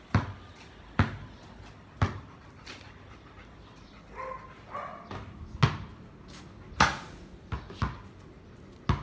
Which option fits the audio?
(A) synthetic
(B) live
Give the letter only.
B